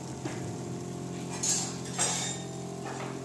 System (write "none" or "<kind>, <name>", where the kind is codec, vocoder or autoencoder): none